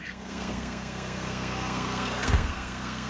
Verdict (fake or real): fake